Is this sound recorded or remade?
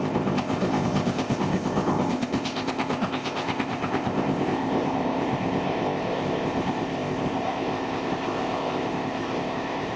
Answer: remade